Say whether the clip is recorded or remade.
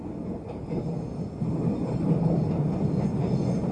recorded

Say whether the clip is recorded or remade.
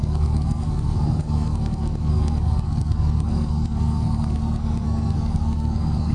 remade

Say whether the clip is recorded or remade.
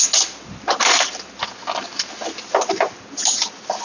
recorded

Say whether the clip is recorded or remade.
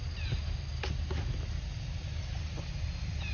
recorded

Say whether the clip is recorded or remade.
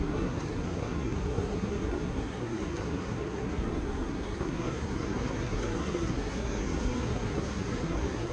remade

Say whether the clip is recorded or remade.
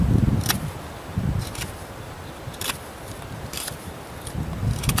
recorded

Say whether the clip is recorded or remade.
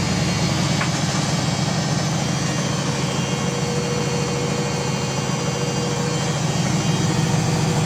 recorded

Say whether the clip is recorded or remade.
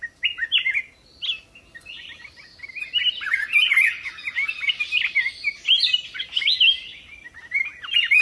recorded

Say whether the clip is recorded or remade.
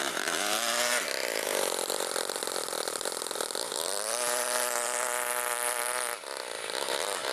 remade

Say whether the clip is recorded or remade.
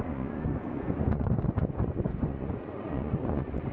remade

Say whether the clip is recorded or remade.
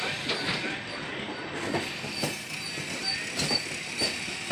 recorded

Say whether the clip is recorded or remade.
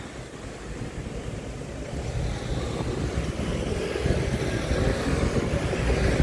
recorded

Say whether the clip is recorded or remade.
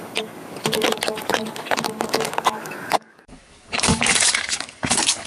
remade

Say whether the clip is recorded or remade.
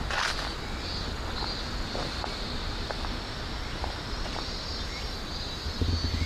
recorded